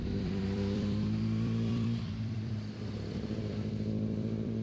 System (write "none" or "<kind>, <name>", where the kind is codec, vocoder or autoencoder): vocoder, BigVGAN v2